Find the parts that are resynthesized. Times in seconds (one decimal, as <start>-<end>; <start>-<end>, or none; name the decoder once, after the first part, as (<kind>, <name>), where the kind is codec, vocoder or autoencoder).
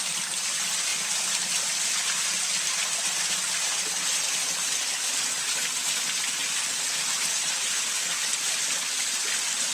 none